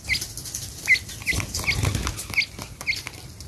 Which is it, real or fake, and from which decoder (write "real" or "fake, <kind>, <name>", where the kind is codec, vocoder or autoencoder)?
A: real